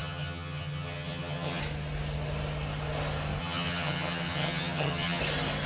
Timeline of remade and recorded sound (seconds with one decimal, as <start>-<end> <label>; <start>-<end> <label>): 0.0-1.6 remade; 1.6-3.4 recorded; 3.4-5.2 remade; 5.2-5.7 recorded

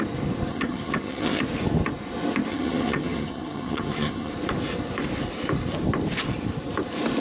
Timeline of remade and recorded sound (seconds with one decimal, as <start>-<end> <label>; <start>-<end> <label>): 0.0-0.5 recorded; 0.5-1.4 remade; 1.4-2.5 recorded; 2.5-4.3 remade; 4.3-7.2 recorded

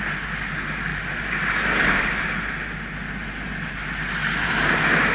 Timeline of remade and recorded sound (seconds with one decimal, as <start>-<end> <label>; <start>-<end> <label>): 0.0-5.1 recorded